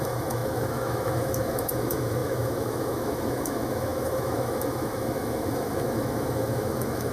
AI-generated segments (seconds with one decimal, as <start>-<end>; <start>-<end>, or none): 0.0-7.1